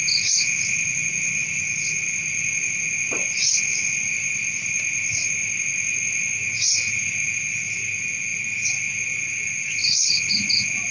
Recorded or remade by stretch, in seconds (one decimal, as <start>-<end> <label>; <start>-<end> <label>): 0.0-9.8 recorded; 9.8-10.3 remade; 10.3-10.9 recorded